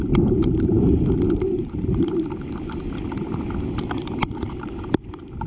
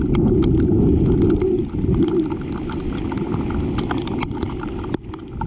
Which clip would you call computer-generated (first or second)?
first